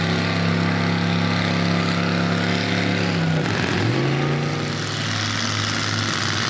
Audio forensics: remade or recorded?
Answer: recorded